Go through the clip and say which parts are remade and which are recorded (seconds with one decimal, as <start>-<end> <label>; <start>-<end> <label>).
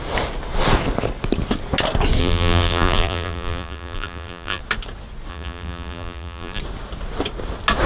0.0-2.2 recorded; 2.2-4.6 remade; 4.6-5.3 recorded; 5.3-6.6 remade; 6.6-7.9 recorded